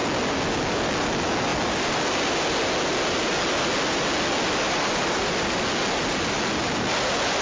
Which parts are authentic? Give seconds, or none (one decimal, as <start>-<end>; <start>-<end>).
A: 0.0-7.4